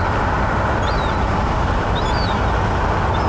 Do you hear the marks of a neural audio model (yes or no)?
no